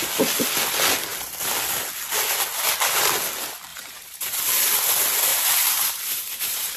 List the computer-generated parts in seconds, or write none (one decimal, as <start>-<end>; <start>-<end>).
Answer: 3.7-4.4; 5.3-6.8